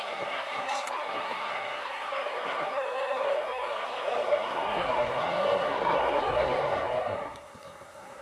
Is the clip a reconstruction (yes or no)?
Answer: yes